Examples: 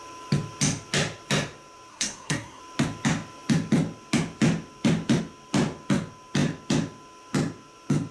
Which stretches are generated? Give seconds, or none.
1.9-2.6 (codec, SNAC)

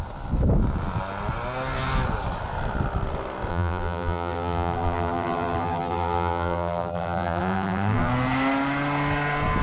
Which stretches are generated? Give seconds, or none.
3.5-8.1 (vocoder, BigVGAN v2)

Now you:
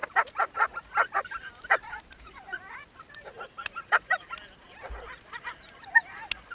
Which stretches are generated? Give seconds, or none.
none

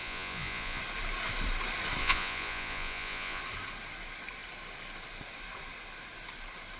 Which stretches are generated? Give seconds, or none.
0.0-0.8 (vocoder, Vocos); 2.0-3.4

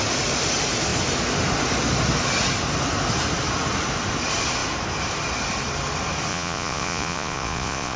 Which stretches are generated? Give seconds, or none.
6.3-8.0 (vocoder, Vocos)

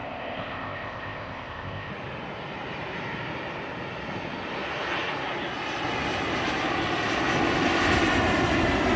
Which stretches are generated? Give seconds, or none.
0.0-1.9 (codec, ZipCodec)